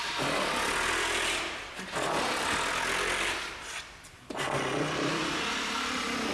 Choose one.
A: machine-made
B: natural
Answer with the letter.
B